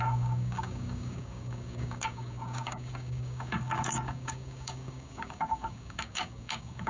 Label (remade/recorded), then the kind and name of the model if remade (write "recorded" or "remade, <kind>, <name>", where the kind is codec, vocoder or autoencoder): remade, codec, DAC